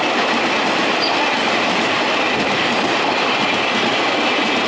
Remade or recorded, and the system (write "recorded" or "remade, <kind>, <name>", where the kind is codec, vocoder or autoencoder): recorded